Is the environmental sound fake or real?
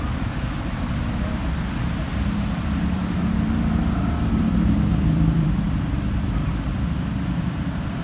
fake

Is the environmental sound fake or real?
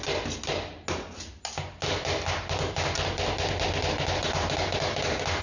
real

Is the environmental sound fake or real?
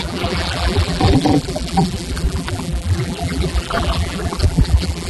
fake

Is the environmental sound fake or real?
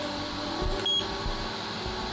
real